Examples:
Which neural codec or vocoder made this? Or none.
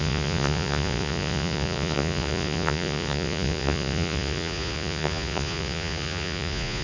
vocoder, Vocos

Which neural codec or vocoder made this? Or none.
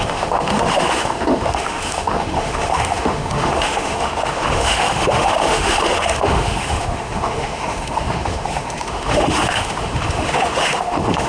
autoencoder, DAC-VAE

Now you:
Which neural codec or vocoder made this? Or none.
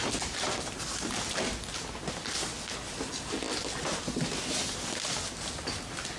none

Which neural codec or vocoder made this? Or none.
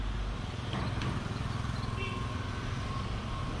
none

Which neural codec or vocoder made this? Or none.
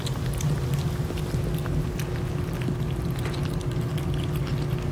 none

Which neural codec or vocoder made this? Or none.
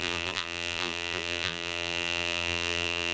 vocoder, BigVGAN v2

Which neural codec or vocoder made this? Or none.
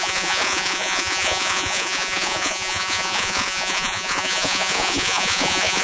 vocoder, Vocos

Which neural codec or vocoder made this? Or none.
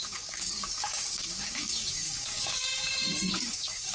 codec, DAC